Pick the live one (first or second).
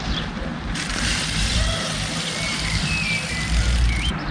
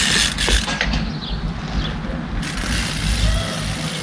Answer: second